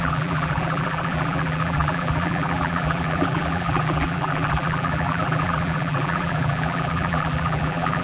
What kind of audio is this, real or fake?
fake